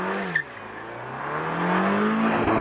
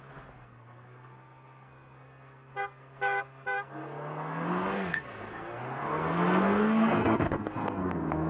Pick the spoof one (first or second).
second